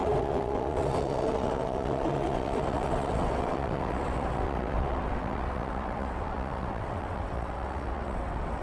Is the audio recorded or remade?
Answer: remade